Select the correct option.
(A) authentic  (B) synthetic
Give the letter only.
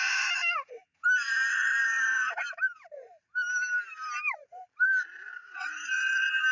B